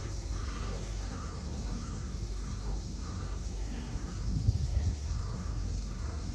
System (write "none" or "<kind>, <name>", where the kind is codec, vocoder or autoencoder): codec, SNAC